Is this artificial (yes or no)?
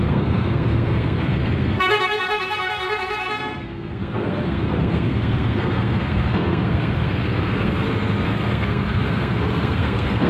yes